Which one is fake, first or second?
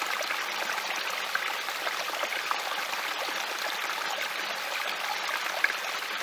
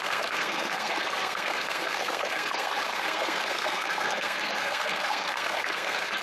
second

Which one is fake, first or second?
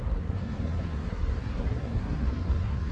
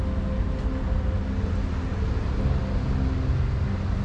first